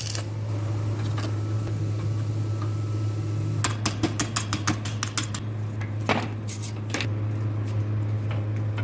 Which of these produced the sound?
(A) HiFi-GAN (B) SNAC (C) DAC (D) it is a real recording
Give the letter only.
D